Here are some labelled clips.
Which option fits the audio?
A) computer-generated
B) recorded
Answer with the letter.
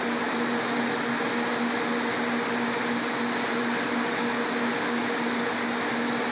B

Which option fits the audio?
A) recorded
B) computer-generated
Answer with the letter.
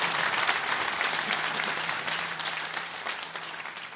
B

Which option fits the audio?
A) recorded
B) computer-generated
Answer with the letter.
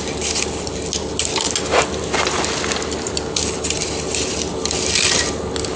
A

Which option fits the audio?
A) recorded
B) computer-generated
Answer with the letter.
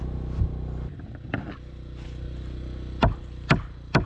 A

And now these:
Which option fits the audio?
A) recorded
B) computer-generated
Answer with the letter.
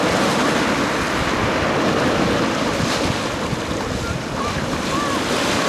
A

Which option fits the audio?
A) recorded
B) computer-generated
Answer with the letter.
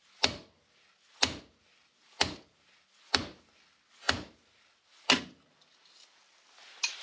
A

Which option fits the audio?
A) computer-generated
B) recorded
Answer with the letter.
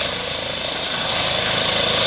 B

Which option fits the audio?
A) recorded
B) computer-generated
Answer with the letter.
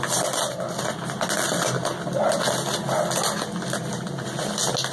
A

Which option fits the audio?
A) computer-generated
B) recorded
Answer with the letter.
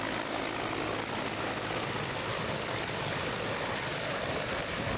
B